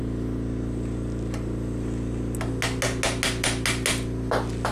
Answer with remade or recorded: recorded